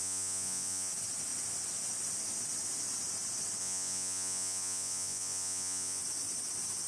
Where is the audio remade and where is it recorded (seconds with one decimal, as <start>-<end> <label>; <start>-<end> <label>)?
0.0-0.9 remade; 0.9-3.6 recorded; 3.6-6.0 remade; 6.0-6.9 recorded